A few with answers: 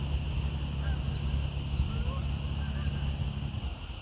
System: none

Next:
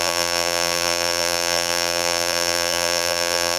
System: vocoder, BigVGAN v2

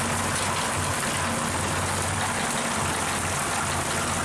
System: none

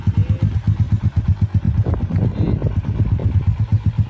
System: none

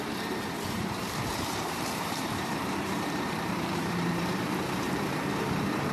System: vocoder, BigVGAN v2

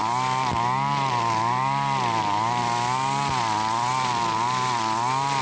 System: none